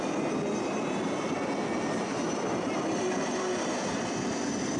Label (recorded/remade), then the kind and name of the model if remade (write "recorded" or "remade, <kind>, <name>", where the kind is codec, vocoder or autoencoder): recorded